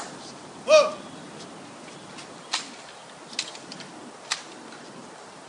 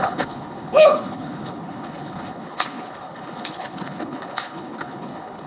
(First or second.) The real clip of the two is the first